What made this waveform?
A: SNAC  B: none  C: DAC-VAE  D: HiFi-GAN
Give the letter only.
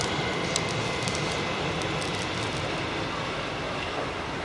B